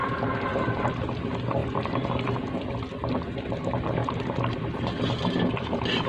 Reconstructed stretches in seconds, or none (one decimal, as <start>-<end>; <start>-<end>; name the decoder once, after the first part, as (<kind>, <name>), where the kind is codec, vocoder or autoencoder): 0.0-0.9 (vocoder, BigVGAN v2); 4.0-4.8